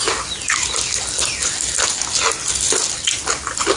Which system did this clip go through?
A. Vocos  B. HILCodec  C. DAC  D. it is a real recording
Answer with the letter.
D